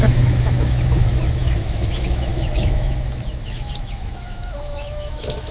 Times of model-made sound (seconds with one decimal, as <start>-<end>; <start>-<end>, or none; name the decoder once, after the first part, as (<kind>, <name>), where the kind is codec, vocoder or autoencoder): 0.0-5.5 (autoencoder, DAC-VAE)